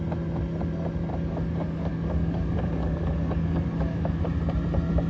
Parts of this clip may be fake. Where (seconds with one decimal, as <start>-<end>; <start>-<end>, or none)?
1.1-4.2

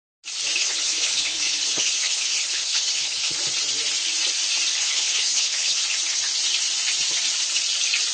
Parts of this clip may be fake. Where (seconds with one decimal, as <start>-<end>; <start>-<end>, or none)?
0.6-3.4; 4.7-5.8

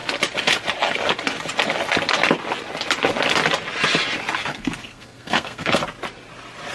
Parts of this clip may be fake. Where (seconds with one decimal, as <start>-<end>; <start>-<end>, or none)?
4.5-5.8

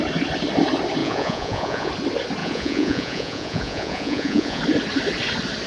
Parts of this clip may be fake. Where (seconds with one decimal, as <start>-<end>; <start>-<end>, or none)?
1.0-1.9; 2.4-4.6

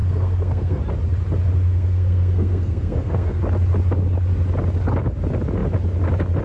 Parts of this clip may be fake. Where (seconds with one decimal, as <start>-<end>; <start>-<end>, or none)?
0.0-0.8; 1.7-3.4

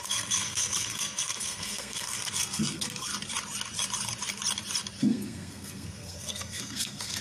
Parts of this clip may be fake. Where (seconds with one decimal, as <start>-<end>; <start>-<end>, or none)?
0.0-3.1; 5.0-7.2

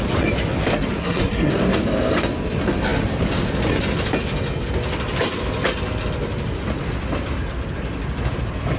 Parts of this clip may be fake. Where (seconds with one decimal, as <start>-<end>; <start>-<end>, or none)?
1.0-1.5

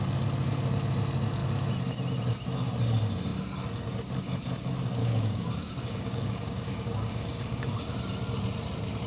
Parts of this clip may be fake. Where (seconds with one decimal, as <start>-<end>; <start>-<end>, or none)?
5.0-7.9